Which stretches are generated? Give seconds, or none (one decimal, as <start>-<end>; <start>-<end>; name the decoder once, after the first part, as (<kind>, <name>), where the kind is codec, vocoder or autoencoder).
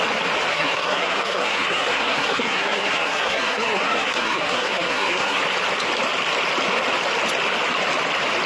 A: 0.5-5.4 (codec, SNAC)